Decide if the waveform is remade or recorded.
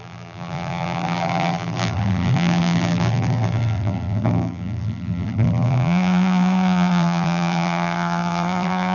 remade